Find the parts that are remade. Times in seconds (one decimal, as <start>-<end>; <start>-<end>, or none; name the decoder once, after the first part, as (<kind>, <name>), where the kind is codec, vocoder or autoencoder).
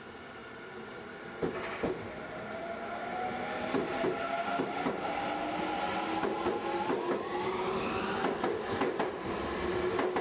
none